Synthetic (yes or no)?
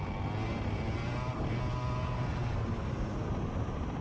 no